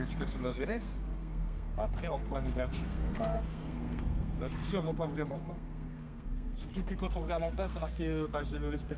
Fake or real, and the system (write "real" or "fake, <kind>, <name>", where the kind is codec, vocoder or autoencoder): fake, codec, SNAC